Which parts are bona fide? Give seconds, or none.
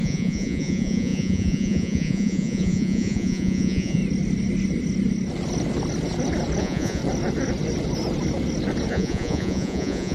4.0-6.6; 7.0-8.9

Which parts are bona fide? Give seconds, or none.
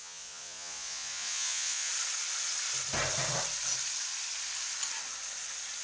1.9-5.8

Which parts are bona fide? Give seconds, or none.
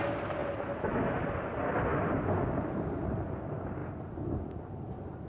0.0-5.3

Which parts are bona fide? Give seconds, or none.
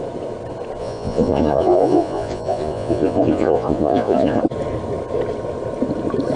0.0-0.8; 4.4-6.4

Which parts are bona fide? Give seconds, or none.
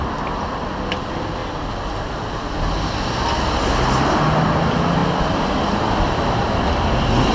0.0-7.3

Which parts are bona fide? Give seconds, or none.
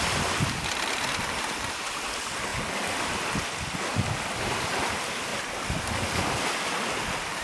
0.0-7.4